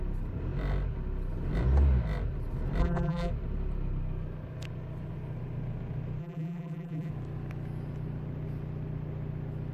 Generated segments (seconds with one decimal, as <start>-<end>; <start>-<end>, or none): 2.8-3.3; 6.2-7.1